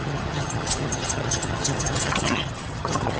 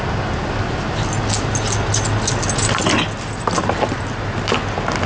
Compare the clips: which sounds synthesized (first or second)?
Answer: first